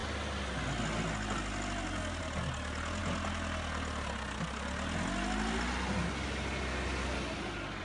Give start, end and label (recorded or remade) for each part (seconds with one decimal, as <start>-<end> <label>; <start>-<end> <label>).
0.0-7.8 recorded